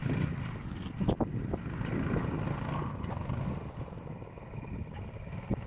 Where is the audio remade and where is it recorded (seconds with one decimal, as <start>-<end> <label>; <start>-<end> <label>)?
0.0-5.7 recorded